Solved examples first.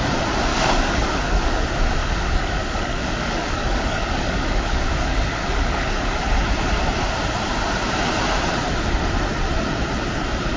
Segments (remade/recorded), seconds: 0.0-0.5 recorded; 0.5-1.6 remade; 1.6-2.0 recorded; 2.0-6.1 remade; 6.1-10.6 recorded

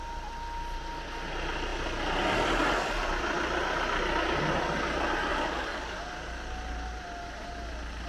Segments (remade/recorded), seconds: 0.0-5.3 recorded; 5.3-6.0 remade; 6.0-8.1 recorded